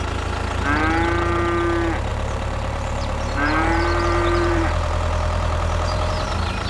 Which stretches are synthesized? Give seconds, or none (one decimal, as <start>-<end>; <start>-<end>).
2.1-6.1